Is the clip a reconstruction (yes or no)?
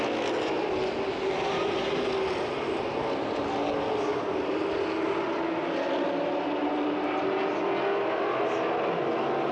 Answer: no